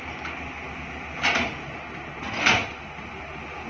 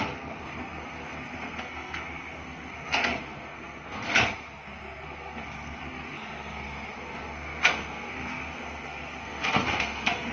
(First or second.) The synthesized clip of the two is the second